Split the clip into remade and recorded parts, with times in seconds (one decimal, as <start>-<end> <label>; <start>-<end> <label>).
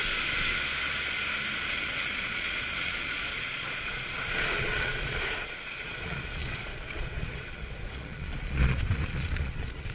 0.0-1.6 recorded; 1.6-9.9 remade